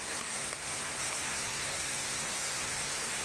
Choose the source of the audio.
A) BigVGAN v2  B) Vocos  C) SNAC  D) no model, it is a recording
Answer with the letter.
C